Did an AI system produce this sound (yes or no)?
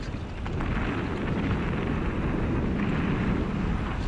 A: no